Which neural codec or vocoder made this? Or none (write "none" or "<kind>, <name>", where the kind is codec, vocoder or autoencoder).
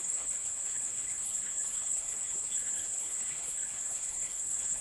codec, HILCodec